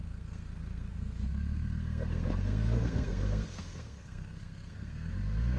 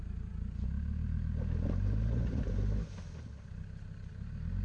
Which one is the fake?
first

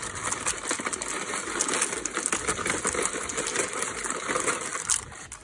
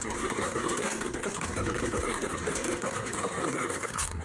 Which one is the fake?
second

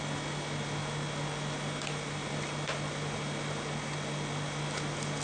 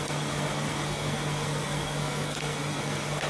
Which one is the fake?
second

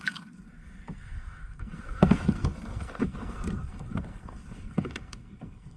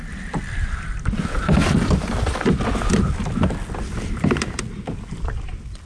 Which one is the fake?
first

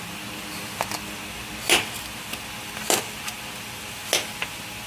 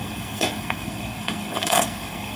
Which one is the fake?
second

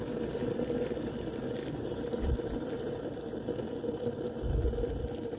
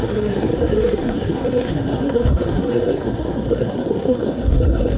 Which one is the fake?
second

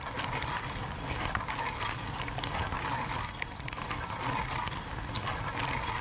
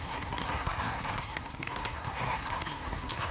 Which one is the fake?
second